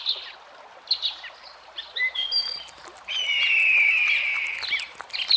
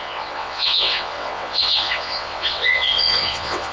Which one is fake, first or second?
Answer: second